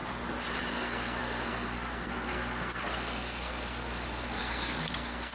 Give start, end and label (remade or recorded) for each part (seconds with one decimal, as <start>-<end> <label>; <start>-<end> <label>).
0.0-0.7 recorded; 0.7-5.3 remade